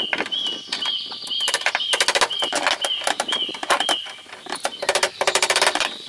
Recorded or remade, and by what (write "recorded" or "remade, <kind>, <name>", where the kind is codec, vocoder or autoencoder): recorded